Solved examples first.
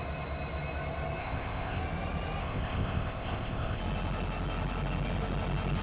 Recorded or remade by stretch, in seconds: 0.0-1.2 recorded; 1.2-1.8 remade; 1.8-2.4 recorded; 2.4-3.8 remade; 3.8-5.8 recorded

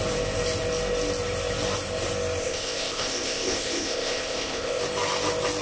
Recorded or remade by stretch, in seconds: 0.0-2.4 recorded; 2.4-4.8 remade; 4.8-5.6 recorded

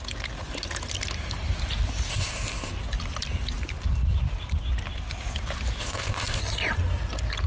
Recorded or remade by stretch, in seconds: 0.0-2.1 recorded; 2.1-2.7 remade; 2.7-5.8 recorded; 5.8-6.4 remade; 6.4-7.5 recorded

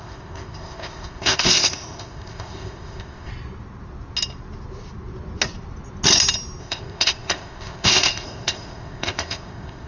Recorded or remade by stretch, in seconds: 0.0-3.3 remade; 3.3-6.6 recorded; 6.6-9.9 remade

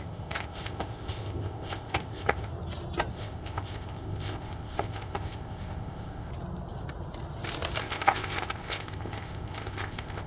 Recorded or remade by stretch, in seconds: 0.0-2.5 remade; 2.5-3.1 recorded; 3.1-6.3 remade; 6.3-7.8 recorded; 7.8-10.3 remade

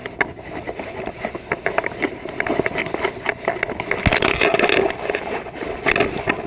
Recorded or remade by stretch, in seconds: 0.0-6.5 recorded

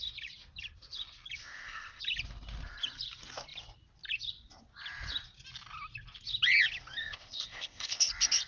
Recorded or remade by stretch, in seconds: 0.0-1.4 recorded; 1.4-2.0 remade; 2.0-7.0 recorded; 7.0-8.1 remade; 8.1-8.5 recorded

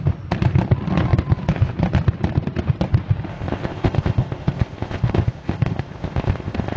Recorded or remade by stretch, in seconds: 0.0-3.3 recorded; 3.3-6.8 remade